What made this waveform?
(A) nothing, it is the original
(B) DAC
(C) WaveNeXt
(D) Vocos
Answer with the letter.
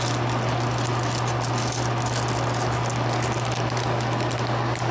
A